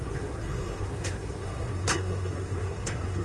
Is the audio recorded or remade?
remade